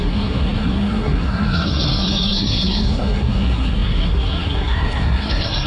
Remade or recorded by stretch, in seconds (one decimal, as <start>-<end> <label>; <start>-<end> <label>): 0.0-5.7 remade